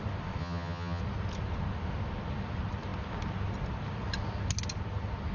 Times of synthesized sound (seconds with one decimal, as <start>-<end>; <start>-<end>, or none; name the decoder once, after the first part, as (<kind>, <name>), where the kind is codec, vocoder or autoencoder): 0.4-1.0 (vocoder, HiFi-GAN)